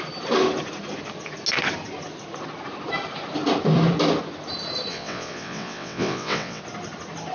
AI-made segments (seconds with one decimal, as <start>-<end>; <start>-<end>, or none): 4.9-6.6